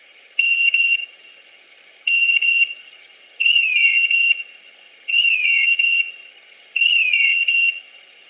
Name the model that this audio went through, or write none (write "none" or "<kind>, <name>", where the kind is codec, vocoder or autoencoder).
vocoder, HiFi-GAN